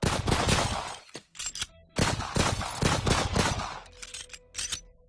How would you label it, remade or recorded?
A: recorded